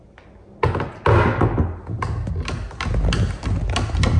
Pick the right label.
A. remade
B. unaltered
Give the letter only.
B